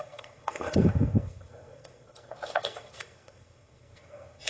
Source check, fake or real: fake